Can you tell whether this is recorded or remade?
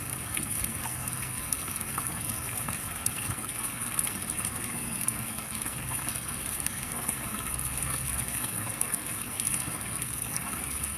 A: remade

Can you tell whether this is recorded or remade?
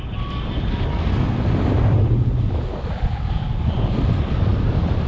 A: recorded